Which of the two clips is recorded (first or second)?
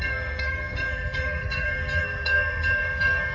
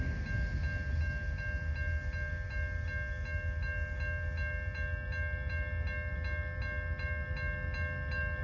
second